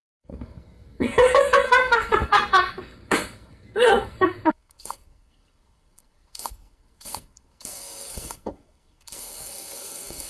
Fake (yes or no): yes